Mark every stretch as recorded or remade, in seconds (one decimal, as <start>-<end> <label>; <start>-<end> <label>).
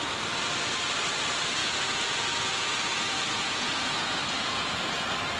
0.0-1.6 recorded; 1.6-4.8 remade; 4.8-5.4 recorded